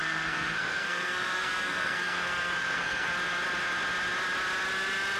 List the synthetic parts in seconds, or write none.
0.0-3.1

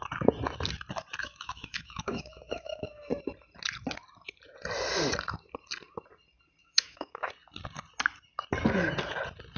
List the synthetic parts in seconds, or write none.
1.2-3.1; 6.6-7.3

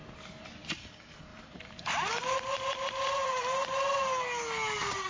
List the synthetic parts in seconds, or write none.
1.3-3.4

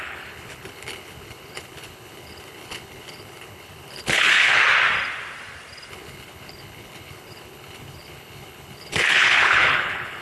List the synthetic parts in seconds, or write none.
0.0-4.6; 5.9-10.2